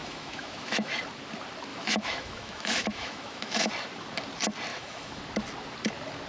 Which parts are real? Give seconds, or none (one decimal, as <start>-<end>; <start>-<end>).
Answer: 1.0-1.7; 3.7-4.7; 5.2-6.3